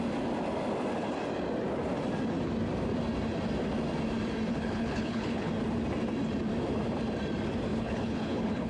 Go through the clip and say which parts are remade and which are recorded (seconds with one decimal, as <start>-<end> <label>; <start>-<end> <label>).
0.0-4.5 recorded; 4.5-5.5 remade; 5.5-7.7 recorded; 7.7-8.7 remade